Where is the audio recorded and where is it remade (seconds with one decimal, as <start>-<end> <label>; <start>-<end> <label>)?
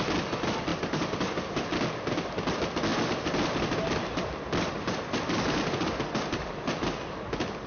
0.0-0.7 recorded; 0.7-1.9 remade; 1.9-2.9 recorded; 2.9-6.5 remade; 6.5-7.7 recorded